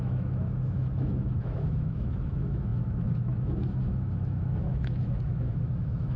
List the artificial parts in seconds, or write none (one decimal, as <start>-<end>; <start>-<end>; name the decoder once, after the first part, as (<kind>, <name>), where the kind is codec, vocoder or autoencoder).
0.0-6.2 (autoencoder, DAC-VAE)